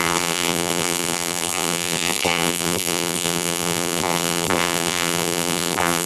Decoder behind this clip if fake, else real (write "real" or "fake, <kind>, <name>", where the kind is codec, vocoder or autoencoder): fake, vocoder, BigVGAN v2